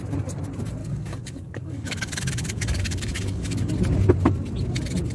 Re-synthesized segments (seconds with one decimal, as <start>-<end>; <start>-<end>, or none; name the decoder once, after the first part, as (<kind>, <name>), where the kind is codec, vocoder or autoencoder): 0.8-3.7 (codec, DAC)